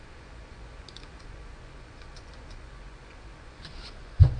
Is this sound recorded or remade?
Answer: remade